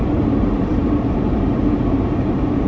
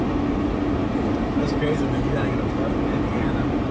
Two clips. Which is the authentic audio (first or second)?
second